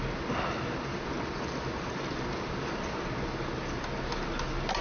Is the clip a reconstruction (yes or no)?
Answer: no